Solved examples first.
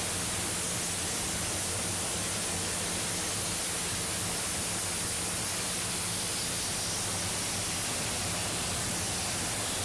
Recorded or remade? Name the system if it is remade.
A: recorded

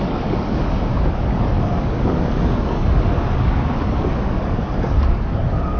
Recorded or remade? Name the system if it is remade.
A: remade, codec, DAC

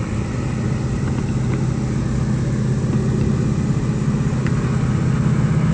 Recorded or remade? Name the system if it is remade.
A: recorded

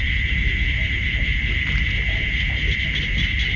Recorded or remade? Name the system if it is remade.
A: recorded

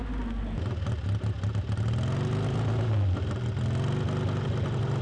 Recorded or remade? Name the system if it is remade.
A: recorded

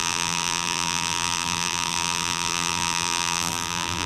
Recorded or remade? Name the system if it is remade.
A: remade, vocoder, BigVGAN v2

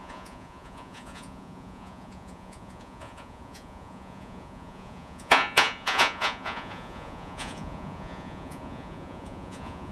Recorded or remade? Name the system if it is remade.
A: remade, vocoder, Vocos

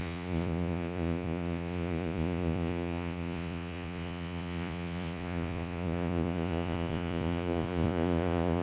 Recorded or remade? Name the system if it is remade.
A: remade, vocoder, Vocos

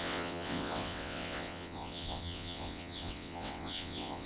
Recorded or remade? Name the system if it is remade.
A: remade, vocoder, WaveNeXt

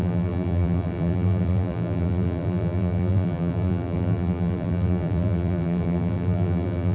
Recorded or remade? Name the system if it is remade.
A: remade, vocoder, BigVGAN v2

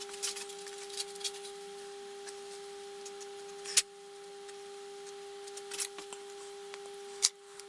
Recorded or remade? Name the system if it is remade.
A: recorded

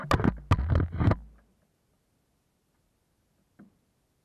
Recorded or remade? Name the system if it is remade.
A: recorded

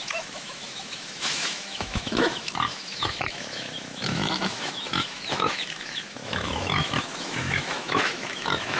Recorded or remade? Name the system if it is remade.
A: remade, autoencoder, DAC-VAE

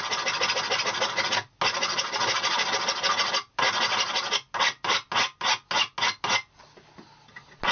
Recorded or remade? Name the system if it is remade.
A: recorded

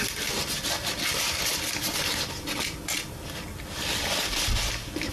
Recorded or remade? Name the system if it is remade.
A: recorded